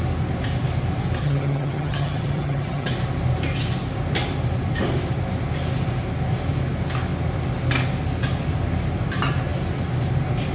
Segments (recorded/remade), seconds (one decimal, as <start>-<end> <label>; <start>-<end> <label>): 0.0-1.2 recorded; 1.2-2.9 remade; 2.9-10.5 recorded